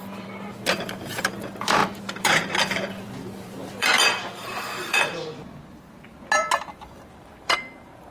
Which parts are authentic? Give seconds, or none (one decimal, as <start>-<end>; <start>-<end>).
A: 5.1-6.7

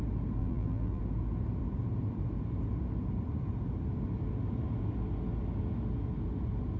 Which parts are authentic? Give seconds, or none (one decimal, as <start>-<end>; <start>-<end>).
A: 0.0-0.4; 1.0-6.8